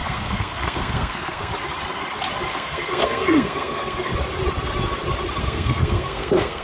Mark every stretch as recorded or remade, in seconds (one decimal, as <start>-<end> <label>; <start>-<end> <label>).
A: 0.0-1.5 remade; 1.5-2.5 recorded; 2.5-4.1 remade; 4.1-5.4 recorded; 5.4-6.6 remade

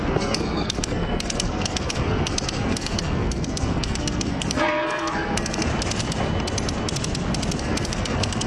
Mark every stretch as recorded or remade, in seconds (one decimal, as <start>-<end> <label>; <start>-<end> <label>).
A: 0.0-5.7 remade; 5.7-7.6 recorded; 7.6-8.5 remade

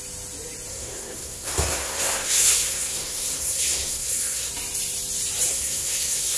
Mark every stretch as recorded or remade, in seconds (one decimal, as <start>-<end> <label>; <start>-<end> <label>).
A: 0.0-0.7 recorded; 0.7-4.5 remade; 4.5-5.5 recorded; 5.5-6.4 remade